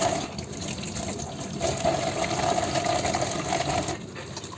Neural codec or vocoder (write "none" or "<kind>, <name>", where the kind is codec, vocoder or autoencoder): none